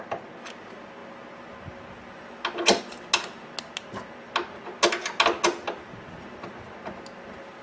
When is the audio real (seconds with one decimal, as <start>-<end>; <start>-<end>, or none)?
0.0-7.6